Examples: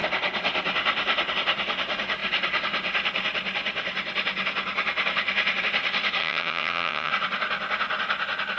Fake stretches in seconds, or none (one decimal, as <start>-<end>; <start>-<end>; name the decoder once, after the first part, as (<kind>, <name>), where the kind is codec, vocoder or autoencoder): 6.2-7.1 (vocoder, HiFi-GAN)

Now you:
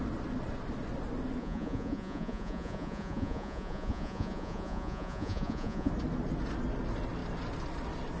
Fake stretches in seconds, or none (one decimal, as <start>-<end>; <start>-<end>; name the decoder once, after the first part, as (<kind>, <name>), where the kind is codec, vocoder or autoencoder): 1.4-5.9 (vocoder, Vocos)

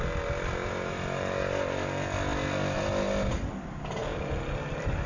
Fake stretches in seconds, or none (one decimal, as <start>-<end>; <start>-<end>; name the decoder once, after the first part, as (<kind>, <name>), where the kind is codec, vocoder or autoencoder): none

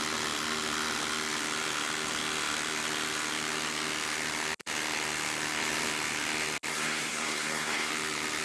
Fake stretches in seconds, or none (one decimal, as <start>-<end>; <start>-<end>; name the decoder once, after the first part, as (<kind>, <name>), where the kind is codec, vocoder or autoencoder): 6.7-7.9 (codec, SNAC)

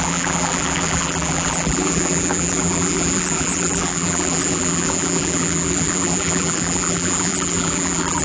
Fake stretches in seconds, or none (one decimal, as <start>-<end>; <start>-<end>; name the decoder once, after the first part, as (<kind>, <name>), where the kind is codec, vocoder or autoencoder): 0.0-8.2 (vocoder, BigVGAN v2)